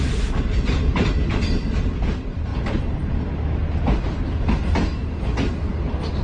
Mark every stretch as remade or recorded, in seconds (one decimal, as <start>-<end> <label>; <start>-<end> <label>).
0.0-6.2 recorded